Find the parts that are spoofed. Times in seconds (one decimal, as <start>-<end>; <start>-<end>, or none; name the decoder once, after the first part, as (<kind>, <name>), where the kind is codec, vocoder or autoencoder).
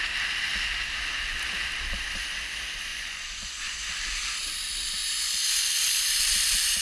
2.9-3.9 (vocoder, Vocos)